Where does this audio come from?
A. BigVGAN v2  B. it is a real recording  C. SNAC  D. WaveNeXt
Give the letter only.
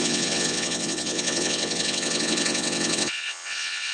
D